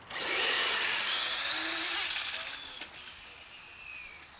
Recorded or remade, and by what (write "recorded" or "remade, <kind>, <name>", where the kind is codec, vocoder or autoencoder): recorded